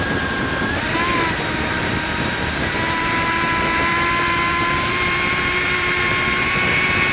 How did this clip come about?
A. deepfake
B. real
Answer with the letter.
A